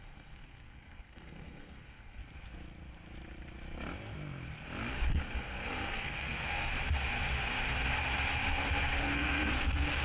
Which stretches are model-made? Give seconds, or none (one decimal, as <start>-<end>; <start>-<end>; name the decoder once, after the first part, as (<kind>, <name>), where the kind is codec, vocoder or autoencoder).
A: 0.0-2.2 (codec, SNAC); 5.1-6.7; 9.0-10.0